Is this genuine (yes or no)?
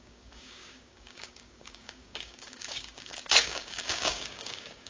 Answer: no